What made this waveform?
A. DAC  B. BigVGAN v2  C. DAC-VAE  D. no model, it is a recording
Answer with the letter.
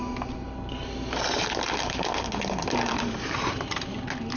D